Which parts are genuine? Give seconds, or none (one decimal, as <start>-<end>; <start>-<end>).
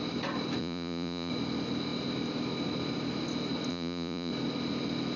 0.0-0.6; 1.3-3.7; 4.3-5.2